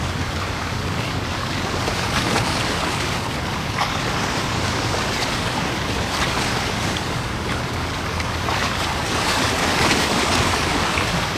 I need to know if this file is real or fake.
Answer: fake